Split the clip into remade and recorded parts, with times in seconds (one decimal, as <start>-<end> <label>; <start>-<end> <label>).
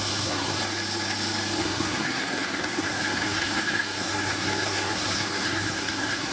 0.0-0.6 remade; 0.6-1.6 recorded; 1.6-6.3 remade